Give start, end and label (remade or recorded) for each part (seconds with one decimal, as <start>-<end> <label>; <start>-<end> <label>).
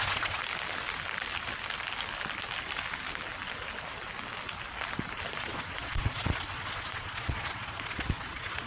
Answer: 0.0-0.4 remade; 0.4-5.4 recorded; 5.4-8.7 remade